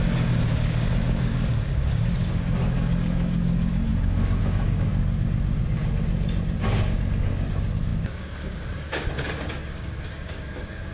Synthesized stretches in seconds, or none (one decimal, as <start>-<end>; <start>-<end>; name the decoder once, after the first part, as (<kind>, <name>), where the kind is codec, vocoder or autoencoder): 0.0-4.9 (codec, DAC); 6.6-10.9